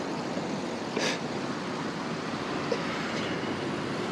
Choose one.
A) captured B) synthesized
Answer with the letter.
A